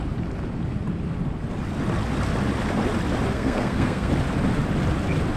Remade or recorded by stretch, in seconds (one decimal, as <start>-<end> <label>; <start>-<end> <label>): 0.0-3.3 recorded; 3.3-4.1 remade; 4.1-5.4 recorded